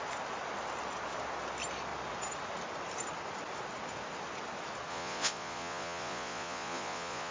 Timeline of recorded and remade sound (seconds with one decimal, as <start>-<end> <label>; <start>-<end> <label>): 0.0-4.9 recorded; 4.9-7.3 remade